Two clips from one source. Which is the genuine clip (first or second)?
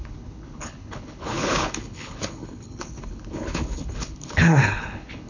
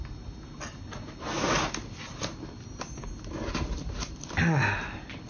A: second